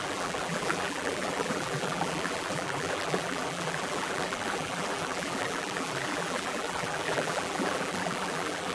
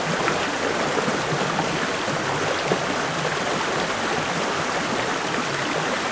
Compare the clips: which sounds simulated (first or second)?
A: first